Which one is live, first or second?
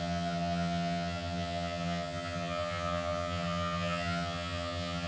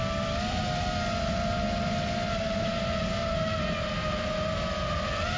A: second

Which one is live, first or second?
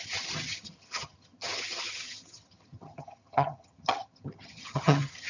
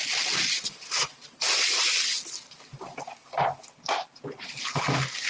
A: second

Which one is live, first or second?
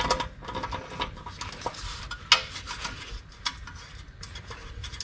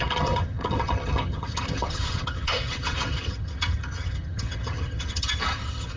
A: first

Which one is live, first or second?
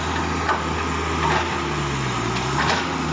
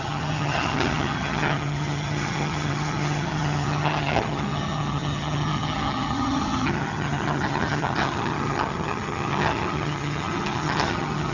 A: first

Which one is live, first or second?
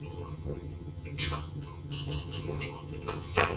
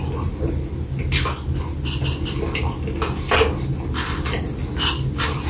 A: second